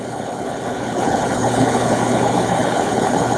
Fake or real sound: fake